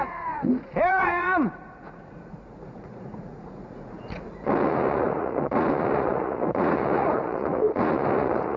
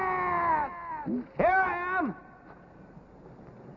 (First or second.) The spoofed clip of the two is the first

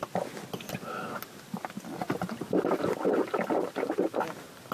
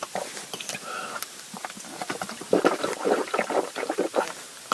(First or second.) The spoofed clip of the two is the second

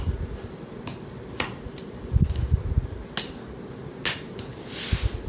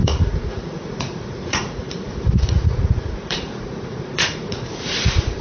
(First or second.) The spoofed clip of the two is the second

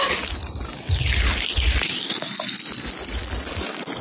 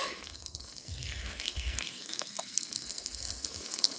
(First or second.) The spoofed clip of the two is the second